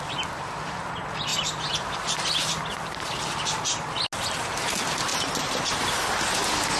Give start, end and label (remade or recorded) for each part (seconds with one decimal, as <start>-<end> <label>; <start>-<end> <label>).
0.0-6.8 recorded